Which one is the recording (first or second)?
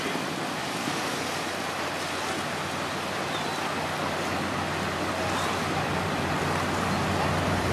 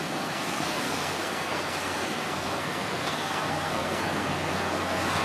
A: first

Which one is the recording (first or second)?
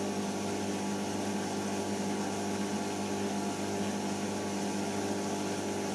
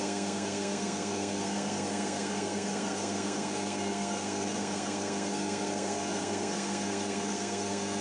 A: first